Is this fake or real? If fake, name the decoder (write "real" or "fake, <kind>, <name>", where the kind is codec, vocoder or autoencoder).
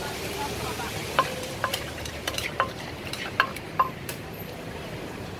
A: fake, vocoder, BigVGAN v2